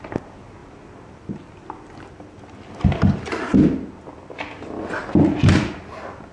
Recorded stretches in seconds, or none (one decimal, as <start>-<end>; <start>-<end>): 0.0-6.3